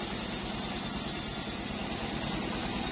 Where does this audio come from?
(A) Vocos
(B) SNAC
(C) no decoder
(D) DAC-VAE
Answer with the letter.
C